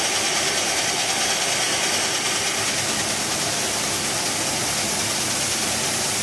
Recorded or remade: recorded